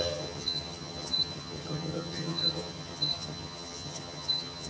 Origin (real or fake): fake